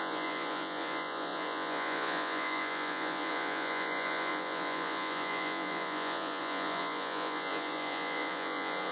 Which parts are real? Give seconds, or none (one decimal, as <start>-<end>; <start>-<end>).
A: none